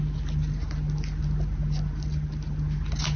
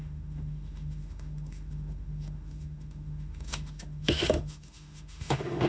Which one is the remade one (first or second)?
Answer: second